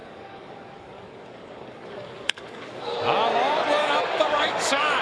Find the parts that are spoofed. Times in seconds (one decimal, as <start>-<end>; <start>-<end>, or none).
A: 0.0-3.0; 3.8-5.0